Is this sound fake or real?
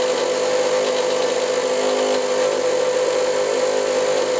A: real